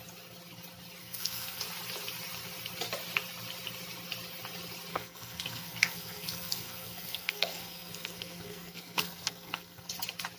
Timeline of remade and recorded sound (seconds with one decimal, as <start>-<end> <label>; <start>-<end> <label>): 0.0-1.0 recorded; 1.0-1.6 remade; 1.6-4.9 recorded; 4.9-9.9 remade; 9.9-10.4 recorded